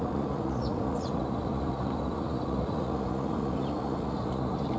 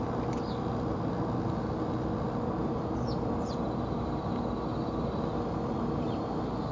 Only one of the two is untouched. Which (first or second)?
second